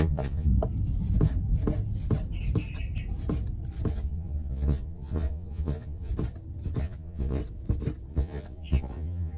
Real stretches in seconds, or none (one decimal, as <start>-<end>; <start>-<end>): 0.5-3.9; 6.1-6.8; 7.4-8.1